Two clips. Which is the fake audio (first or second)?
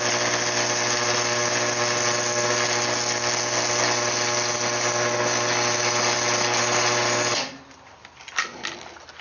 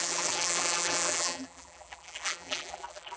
second